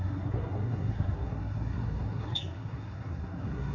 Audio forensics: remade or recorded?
remade